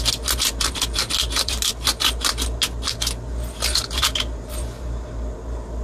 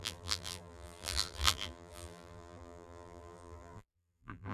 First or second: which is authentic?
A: first